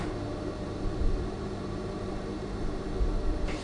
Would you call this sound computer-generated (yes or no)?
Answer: yes